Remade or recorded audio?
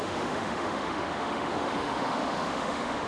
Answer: remade